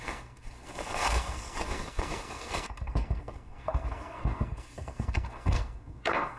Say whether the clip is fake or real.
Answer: fake